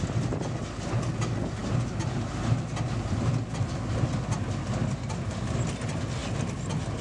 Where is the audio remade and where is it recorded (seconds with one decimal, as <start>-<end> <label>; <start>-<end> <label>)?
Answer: 0.0-7.0 recorded